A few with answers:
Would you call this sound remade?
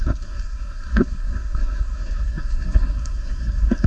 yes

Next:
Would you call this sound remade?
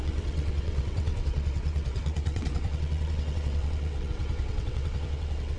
yes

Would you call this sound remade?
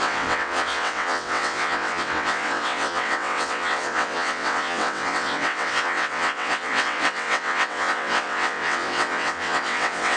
yes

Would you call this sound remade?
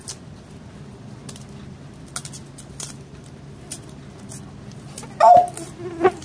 no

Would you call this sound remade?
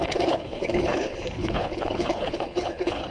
yes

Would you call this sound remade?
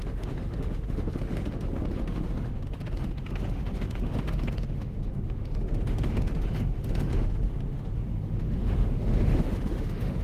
yes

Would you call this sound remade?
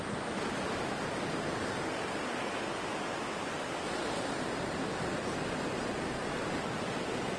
no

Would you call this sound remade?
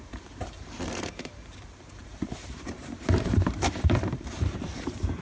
yes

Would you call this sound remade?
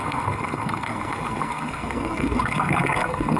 yes